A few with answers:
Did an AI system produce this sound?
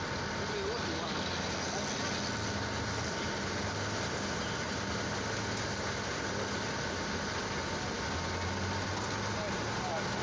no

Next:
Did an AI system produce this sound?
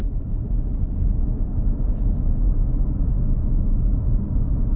no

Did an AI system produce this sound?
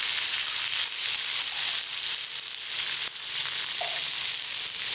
no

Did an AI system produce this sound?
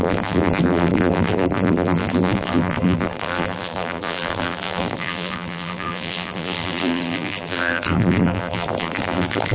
yes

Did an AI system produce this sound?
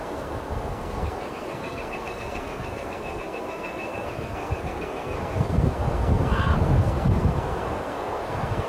yes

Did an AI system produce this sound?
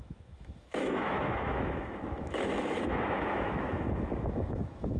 yes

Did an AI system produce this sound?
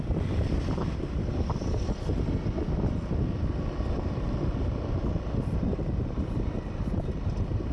no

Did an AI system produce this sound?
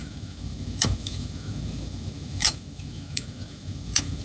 yes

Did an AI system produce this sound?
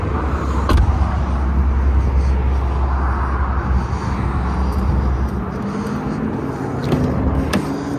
no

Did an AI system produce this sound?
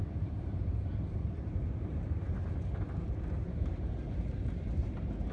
no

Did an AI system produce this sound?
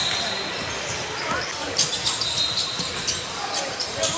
no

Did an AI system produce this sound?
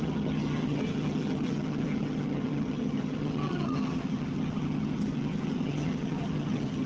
yes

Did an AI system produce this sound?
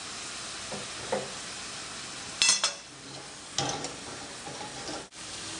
no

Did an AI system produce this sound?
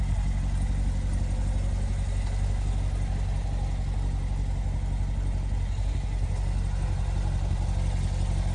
no